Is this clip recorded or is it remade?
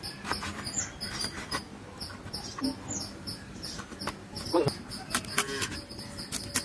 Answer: recorded